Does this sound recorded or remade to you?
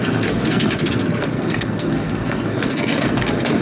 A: remade